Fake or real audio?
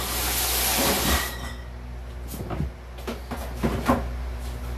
real